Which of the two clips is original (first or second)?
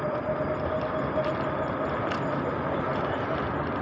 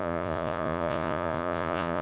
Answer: first